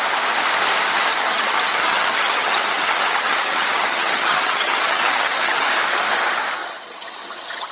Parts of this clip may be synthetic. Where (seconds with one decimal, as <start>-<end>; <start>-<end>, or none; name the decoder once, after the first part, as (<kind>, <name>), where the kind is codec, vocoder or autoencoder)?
1.1-5.7 (vocoder, HiFi-GAN); 6.6-7.7